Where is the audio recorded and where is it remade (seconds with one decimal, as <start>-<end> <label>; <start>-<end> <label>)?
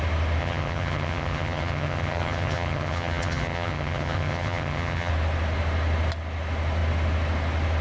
0.0-0.4 recorded; 0.4-5.1 remade; 5.1-7.8 recorded